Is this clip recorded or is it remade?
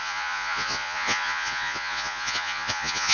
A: remade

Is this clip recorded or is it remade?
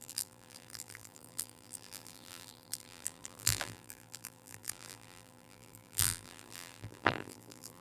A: remade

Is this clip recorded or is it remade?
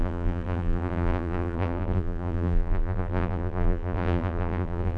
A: remade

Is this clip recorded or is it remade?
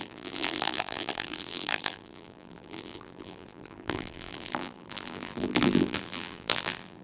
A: remade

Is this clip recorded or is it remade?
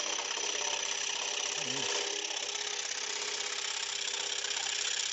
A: remade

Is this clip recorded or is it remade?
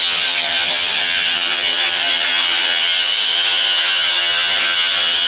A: remade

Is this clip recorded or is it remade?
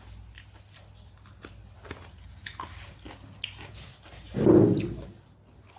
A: recorded